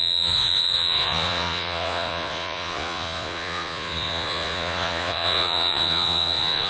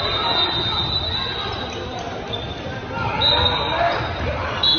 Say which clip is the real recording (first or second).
second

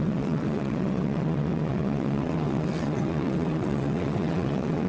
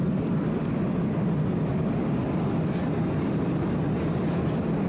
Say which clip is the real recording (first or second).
second